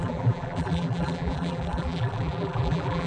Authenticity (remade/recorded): remade